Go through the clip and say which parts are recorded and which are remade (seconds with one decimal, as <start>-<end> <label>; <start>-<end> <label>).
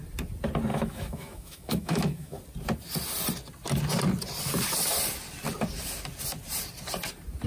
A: 0.0-0.7 recorded; 0.7-2.4 remade; 2.4-7.5 recorded